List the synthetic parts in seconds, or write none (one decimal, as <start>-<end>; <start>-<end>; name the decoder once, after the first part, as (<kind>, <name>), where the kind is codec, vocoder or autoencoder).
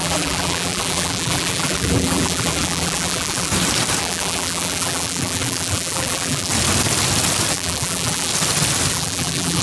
0.0-3.5 (vocoder, BigVGAN v2); 4.0-6.5; 7.5-8.3; 8.9-9.6